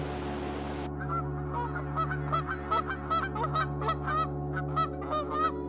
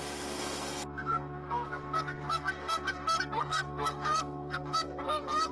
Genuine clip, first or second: first